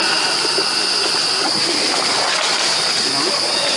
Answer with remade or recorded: recorded